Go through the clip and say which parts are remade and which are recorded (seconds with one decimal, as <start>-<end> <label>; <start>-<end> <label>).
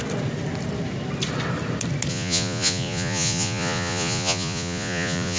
0.0-2.1 recorded; 2.1-5.4 remade